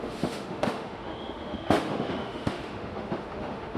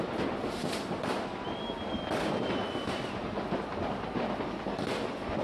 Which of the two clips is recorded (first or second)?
second